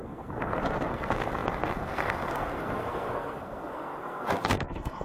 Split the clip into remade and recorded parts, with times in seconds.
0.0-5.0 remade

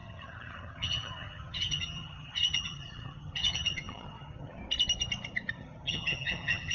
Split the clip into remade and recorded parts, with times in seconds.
0.0-4.6 remade; 4.6-5.5 recorded; 5.5-6.7 remade

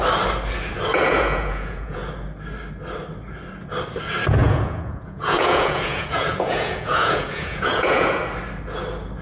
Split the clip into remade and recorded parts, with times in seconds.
0.0-0.9 recorded; 0.9-2.0 remade; 2.0-4.4 recorded; 4.4-8.2 remade; 8.2-9.2 recorded